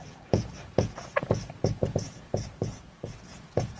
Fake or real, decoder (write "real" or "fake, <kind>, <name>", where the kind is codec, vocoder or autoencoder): fake, vocoder, Vocos